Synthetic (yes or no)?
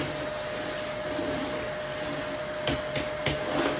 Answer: no